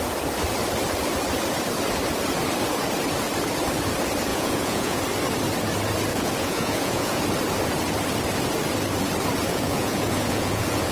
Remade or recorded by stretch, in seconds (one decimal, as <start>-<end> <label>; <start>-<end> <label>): 0.0-4.3 recorded; 4.3-5.0 remade; 5.0-6.1 recorded; 6.1-7.2 remade; 7.2-9.5 recorded; 9.5-10.9 remade